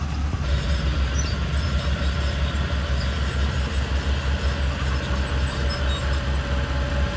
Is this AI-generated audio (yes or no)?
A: no